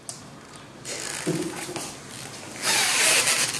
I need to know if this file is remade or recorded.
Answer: recorded